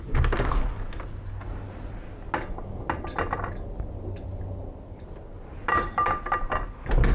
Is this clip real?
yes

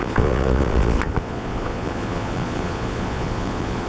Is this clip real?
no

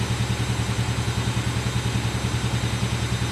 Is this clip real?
yes